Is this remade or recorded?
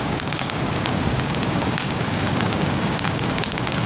remade